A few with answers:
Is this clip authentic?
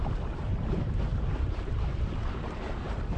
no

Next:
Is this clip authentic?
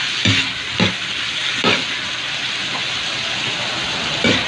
yes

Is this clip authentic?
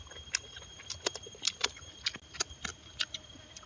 yes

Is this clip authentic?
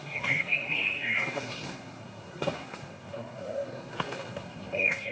no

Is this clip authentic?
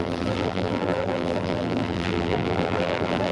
no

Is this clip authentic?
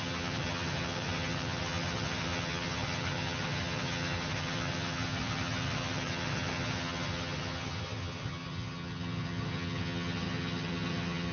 no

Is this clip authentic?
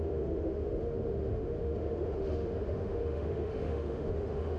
no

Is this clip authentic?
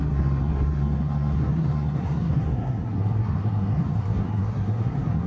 no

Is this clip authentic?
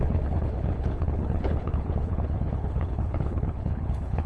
no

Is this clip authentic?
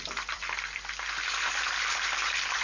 no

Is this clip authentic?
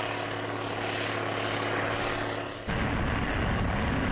yes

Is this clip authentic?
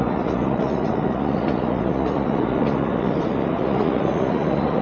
no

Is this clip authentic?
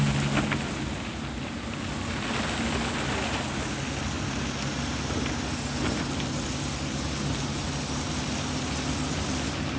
yes